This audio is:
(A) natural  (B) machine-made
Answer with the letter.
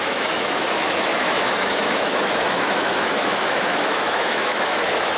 B